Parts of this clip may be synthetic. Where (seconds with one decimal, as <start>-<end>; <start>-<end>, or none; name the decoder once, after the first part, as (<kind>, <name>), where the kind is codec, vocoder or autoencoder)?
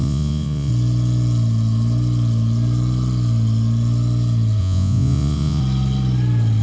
0.0-0.7 (vocoder, Vocos); 4.6-5.6